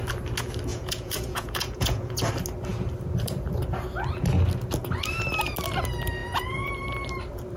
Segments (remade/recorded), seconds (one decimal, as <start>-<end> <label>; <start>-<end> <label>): 0.0-0.7 recorded; 0.7-2.3 remade; 2.3-6.2 recorded; 6.2-6.7 remade; 6.7-7.6 recorded